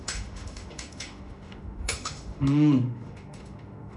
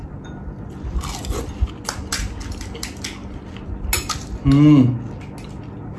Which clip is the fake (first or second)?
first